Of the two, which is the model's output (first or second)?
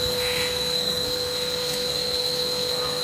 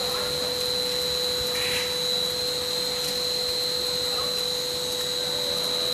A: first